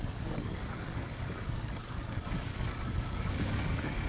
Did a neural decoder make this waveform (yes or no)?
yes